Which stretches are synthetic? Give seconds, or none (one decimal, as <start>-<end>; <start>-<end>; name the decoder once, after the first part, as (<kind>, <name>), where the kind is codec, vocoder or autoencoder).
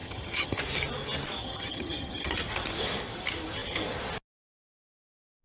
0.0-0.6 (vocoder, HiFi-GAN); 1.4-2.3